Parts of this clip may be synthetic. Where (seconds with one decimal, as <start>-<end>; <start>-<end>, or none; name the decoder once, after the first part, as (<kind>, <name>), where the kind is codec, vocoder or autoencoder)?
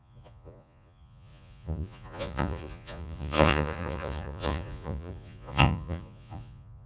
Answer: 0.0-6.9 (vocoder, Vocos)